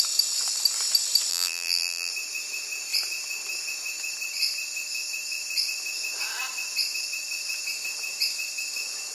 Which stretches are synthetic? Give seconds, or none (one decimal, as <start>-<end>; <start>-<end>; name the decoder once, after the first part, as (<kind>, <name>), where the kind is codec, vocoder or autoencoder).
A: 1.3-2.1 (vocoder, BigVGAN v2)